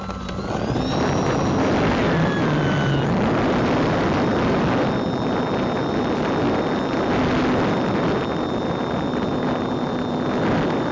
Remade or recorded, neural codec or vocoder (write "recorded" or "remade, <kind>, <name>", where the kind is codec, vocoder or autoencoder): recorded